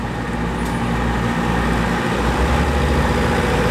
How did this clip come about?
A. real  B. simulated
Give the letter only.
A